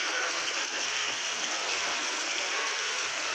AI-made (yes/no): yes